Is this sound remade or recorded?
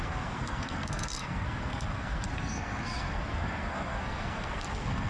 remade